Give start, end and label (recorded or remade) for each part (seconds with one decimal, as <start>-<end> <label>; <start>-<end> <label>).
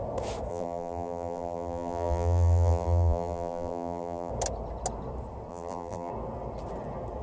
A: 0.0-0.5 recorded; 0.5-4.3 remade; 4.3-5.5 recorded; 5.5-6.1 remade; 6.1-7.2 recorded